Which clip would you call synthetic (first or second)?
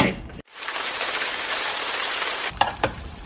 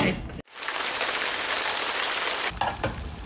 first